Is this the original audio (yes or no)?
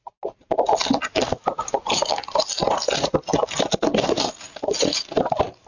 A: yes